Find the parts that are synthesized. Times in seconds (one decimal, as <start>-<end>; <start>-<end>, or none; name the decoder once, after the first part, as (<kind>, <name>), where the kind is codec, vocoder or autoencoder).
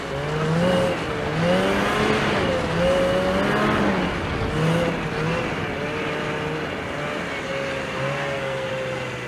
8.2-8.7 (codec, SNAC)